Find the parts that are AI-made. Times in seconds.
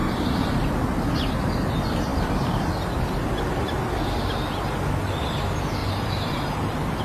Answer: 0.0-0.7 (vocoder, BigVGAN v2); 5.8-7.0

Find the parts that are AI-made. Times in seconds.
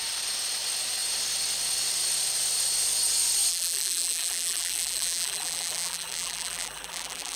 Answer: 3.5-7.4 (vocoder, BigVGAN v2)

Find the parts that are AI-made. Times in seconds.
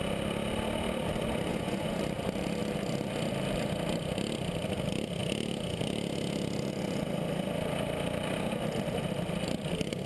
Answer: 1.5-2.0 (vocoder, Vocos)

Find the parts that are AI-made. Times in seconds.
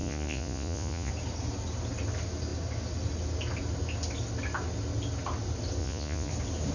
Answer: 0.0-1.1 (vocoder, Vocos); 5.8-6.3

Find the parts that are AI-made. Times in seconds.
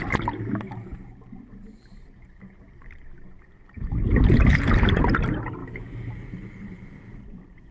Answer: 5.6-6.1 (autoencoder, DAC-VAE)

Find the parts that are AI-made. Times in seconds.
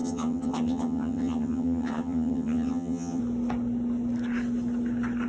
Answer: 0.0-3.2 (vocoder, HiFi-GAN)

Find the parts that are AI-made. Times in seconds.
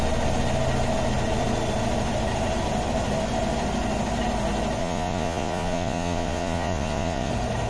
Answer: 4.8-7.3 (vocoder, Vocos)